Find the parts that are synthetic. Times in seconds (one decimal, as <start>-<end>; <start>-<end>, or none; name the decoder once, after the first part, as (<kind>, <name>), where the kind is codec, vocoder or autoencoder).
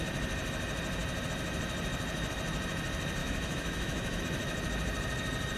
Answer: 3.2-4.2 (autoencoder, DAC-VAE)